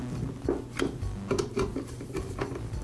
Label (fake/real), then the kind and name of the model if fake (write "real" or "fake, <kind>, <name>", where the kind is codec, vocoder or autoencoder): real